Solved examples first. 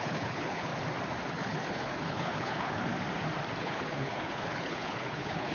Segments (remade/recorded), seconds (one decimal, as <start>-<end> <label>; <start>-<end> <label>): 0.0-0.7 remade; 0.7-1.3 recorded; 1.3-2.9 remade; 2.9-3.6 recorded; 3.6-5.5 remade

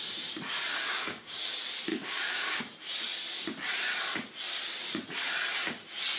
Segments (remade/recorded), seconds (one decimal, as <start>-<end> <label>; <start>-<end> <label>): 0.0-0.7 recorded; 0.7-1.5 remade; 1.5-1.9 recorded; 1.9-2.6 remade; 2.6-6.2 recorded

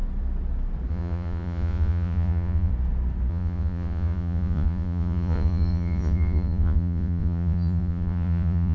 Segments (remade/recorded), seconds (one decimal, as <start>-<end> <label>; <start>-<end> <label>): 0.0-0.9 recorded; 0.9-2.7 remade; 2.7-3.3 recorded; 3.3-8.7 remade

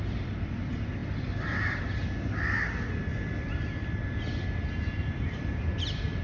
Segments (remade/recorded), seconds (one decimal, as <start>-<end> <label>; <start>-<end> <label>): 0.0-6.2 recorded

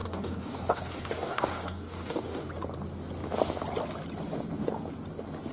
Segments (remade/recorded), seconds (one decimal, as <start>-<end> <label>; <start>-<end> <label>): 0.0-2.5 remade; 2.5-5.5 recorded